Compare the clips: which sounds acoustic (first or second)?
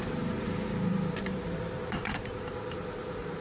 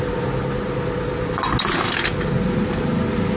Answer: second